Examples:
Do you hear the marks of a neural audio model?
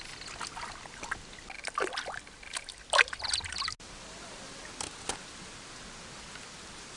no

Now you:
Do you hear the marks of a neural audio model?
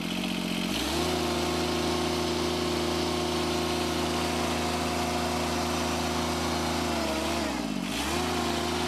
no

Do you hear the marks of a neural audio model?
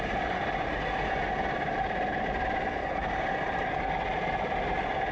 no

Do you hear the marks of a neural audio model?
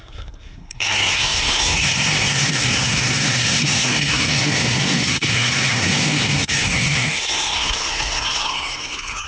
yes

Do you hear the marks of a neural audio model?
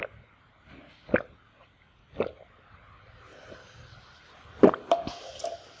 no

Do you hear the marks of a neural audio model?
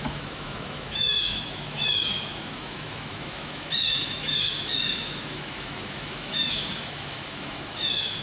yes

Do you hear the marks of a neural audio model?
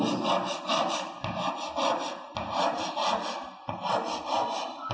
no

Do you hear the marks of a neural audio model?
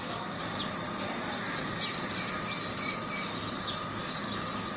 no